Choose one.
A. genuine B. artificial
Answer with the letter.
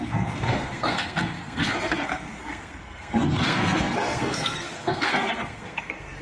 B